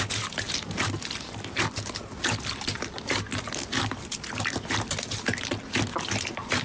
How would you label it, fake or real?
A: real